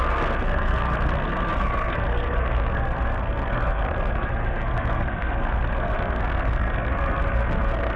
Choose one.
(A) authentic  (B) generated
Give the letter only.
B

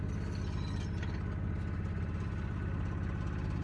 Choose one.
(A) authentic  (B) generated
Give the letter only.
A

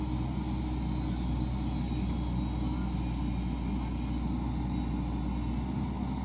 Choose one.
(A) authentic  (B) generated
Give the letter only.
A